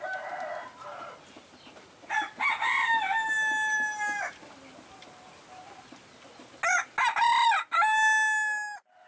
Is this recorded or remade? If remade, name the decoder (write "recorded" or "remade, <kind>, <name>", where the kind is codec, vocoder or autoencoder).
recorded